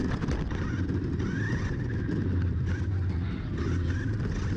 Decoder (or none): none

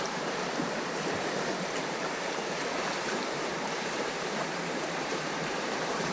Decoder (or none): vocoder, BigVGAN v2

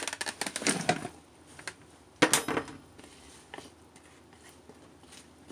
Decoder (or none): none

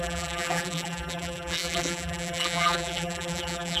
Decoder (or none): vocoder, BigVGAN v2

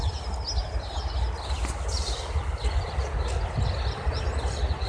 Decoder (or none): none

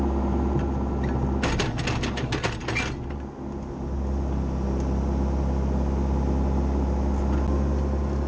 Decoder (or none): none